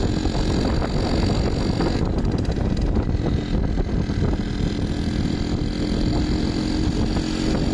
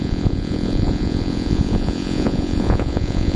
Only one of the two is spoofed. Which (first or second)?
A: second